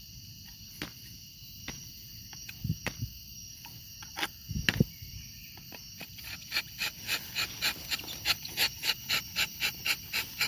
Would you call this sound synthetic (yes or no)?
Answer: no